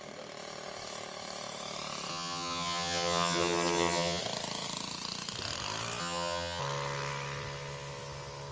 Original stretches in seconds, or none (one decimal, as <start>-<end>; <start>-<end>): 0.0-2.1; 4.2-6.0; 6.6-8.5